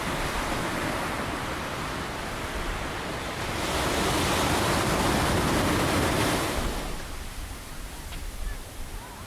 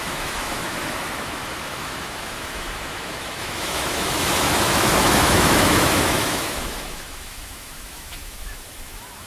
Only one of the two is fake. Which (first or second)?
second